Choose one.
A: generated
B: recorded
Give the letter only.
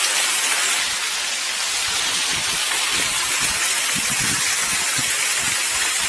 B